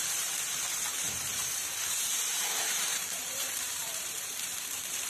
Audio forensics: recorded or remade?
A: remade